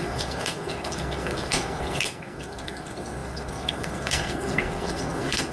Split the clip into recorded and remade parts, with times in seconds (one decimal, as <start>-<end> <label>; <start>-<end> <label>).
0.0-5.5 remade